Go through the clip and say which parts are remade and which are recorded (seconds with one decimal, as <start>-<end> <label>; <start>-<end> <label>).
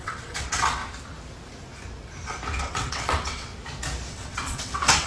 0.0-0.8 remade; 0.8-2.6 recorded; 2.6-3.5 remade; 3.5-4.1 recorded; 4.1-5.1 remade